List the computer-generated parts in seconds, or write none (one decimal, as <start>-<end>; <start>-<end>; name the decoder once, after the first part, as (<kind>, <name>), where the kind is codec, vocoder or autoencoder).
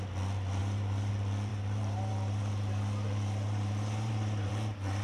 0.6-1.1 (vocoder, BigVGAN v2); 1.5-4.5